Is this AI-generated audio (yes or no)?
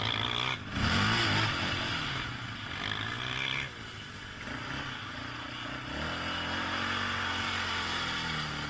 no